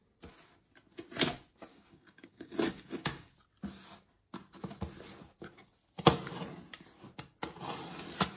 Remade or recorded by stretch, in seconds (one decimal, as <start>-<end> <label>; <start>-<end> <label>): 0.0-1.7 recorded; 1.7-3.3 remade; 3.3-8.4 recorded